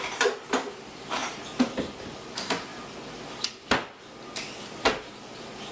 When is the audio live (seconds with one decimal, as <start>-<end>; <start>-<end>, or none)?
0.0-5.7